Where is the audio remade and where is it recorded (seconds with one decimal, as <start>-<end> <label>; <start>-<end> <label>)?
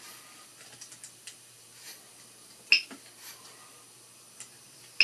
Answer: 0.0-5.0 recorded